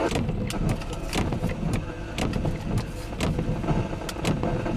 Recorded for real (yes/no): yes